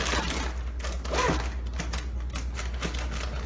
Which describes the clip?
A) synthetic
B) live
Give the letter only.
B